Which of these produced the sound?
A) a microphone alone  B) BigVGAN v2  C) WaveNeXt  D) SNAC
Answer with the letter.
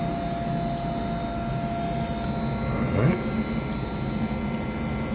A